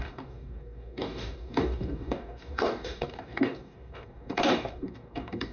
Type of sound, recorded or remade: remade